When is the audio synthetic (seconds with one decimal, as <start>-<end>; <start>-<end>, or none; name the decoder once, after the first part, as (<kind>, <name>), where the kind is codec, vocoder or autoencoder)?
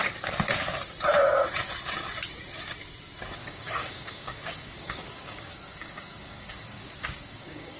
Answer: 3.4-7.8 (codec, DAC)